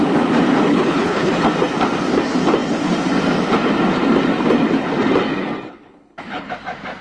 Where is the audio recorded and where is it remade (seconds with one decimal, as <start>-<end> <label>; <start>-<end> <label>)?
0.0-0.7 recorded; 0.7-1.3 remade; 1.3-5.7 recorded; 5.7-6.5 remade; 6.5-7.0 recorded

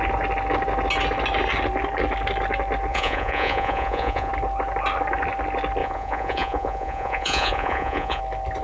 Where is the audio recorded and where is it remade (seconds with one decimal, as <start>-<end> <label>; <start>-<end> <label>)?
0.0-2.9 recorded; 2.9-4.3 remade; 4.3-5.8 recorded; 5.8-8.2 remade; 8.2-8.6 recorded

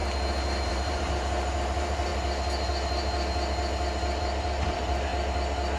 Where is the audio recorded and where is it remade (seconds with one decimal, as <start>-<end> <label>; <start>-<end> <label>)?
0.0-0.7 recorded; 0.7-2.1 remade; 2.1-4.2 recorded; 4.2-5.1 remade; 5.1-5.8 recorded

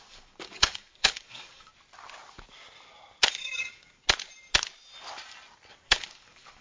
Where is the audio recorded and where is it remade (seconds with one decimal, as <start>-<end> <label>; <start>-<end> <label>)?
0.0-1.7 remade; 1.7-3.3 recorded; 3.3-4.0 remade; 4.0-5.7 recorded; 5.7-6.6 remade